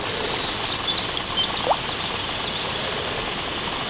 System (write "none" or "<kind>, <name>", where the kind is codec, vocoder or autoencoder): none